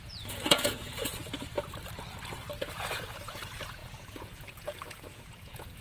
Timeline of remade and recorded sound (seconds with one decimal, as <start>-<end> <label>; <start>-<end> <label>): 0.0-1.1 remade; 1.1-2.6 recorded; 2.6-5.8 remade